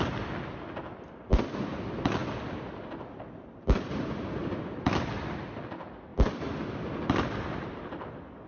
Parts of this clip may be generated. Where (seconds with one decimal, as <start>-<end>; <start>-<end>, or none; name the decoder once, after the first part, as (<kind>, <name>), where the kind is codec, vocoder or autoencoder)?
2.2-3.6 (vocoder, BigVGAN v2); 6.1-7.7